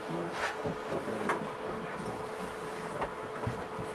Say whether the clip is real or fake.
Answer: real